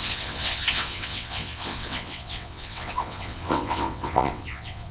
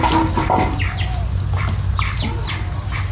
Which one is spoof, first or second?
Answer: first